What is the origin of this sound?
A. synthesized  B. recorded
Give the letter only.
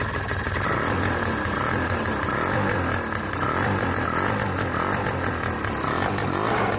B